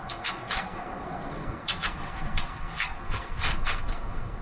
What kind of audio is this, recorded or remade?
remade